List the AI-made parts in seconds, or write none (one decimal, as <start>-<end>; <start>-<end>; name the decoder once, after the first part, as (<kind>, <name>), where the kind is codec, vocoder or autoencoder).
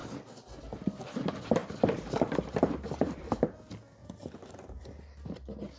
1.6-3.6 (vocoder, BigVGAN v2); 4.0-4.9